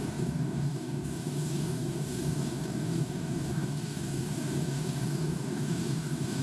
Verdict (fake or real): fake